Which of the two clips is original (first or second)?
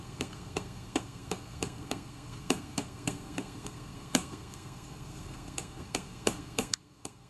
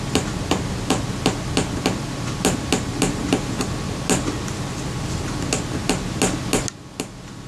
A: second